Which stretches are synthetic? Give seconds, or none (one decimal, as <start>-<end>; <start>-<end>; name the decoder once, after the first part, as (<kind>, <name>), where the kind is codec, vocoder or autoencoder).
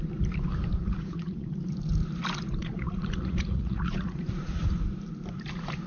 0.8-1.5 (vocoder, Vocos); 2.6-4.6